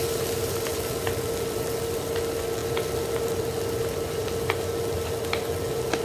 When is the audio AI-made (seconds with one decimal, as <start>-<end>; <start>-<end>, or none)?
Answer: none